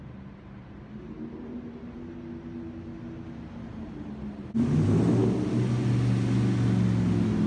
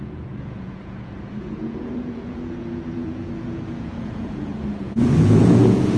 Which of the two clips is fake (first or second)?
second